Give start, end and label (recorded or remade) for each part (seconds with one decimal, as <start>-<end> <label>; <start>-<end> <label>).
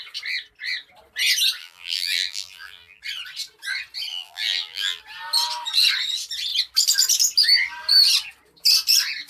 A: 0.0-1.6 recorded; 1.6-3.0 remade; 3.0-4.1 recorded; 4.1-5.0 remade; 5.0-9.3 recorded